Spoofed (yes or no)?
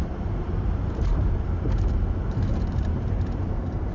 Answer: yes